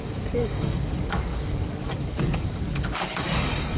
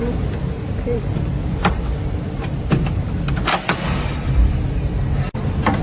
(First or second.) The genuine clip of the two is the second